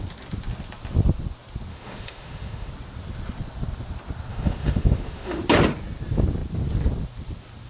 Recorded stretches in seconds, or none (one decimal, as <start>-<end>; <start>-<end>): 0.0-1.7; 2.7-4.3; 5.4-7.7